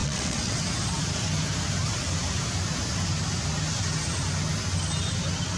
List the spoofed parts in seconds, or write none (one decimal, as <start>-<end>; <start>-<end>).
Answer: 0.0-0.6